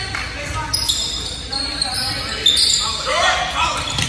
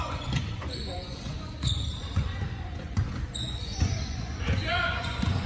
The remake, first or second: second